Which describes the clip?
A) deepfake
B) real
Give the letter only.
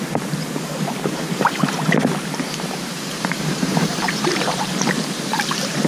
A